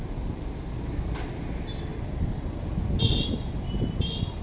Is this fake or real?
real